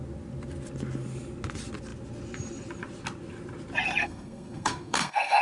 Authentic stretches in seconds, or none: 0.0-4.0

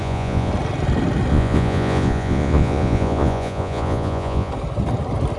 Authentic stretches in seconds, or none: 0.5-1.3; 4.5-5.4

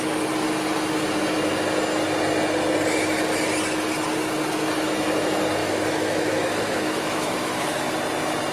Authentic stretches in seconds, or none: 0.0-5.6; 7.9-8.5

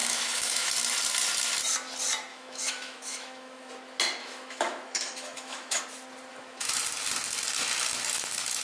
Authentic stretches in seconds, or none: 0.7-2.3; 3.7-4.2; 5.8-6.3; 6.8-8.6

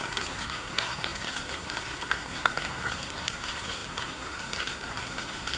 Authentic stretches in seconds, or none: none